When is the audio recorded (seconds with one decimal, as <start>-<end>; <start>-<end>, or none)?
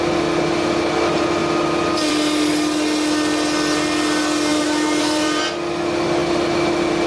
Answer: 0.0-4.5; 5.4-7.1